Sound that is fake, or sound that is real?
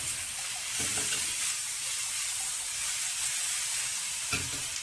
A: real